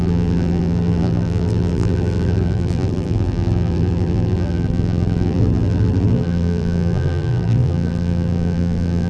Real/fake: fake